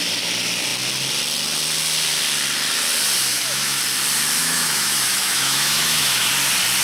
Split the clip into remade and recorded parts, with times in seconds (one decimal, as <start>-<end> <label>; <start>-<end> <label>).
0.0-3.3 recorded; 3.3-3.8 remade; 3.8-4.4 recorded; 4.4-6.3 remade; 6.3-6.8 recorded